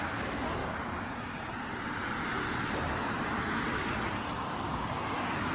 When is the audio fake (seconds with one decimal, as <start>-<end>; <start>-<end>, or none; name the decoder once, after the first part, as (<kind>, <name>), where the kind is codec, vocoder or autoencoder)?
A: 0.6-3.6 (vocoder, BigVGAN v2)